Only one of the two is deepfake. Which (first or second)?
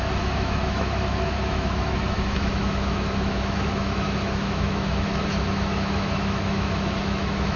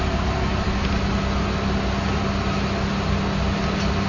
first